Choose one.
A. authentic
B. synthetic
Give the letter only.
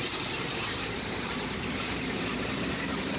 B